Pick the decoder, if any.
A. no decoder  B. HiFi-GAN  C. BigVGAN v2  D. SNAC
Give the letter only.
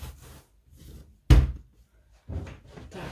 A